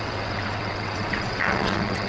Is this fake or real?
fake